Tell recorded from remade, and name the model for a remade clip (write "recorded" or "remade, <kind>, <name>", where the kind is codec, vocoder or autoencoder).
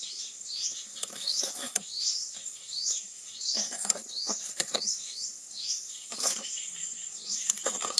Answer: remade, codec, SNAC